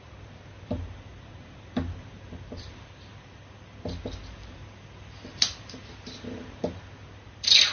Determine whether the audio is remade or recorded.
remade